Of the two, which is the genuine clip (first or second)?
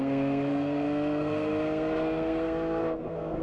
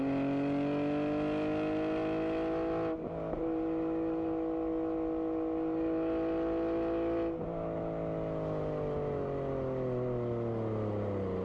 second